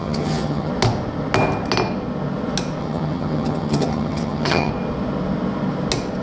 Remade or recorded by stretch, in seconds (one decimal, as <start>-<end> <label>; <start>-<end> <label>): 0.0-0.7 remade; 0.7-2.8 recorded; 2.8-4.7 remade; 4.7-6.2 recorded